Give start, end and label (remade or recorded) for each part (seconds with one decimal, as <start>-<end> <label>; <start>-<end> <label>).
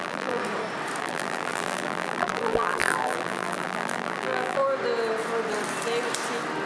0.0-0.4 remade; 0.4-1.0 recorded; 1.0-4.6 remade; 4.6-6.7 recorded